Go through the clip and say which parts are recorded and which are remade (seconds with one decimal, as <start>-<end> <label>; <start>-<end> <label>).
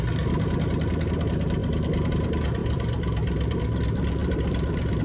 0.0-2.6 recorded; 2.6-3.6 remade; 3.6-4.2 recorded; 4.2-5.0 remade